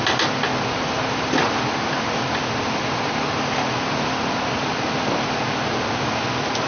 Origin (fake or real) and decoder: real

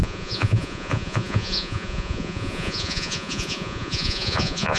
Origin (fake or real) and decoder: fake, vocoder, Vocos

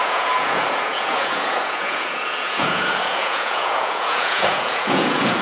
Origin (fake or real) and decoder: fake, vocoder, Vocos